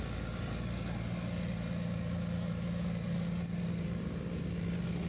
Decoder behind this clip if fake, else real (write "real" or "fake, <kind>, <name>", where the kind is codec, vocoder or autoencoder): real